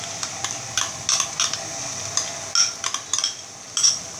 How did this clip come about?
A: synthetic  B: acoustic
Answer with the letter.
B